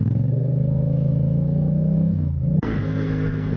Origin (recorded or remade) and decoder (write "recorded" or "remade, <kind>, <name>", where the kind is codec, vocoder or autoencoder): remade, codec, SNAC